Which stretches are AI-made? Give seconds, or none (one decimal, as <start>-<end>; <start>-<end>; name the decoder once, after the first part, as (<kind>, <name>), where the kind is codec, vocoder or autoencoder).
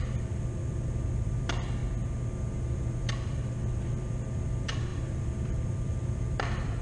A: 0.0-1.8 (vocoder, BigVGAN v2); 2.4-6.8